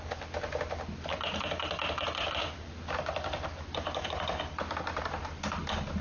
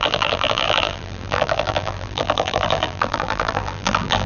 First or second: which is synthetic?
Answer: second